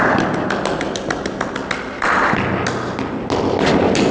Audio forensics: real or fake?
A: real